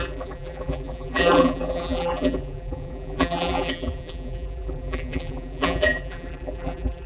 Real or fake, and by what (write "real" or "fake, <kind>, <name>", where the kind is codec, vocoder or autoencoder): fake, vocoder, BigVGAN v2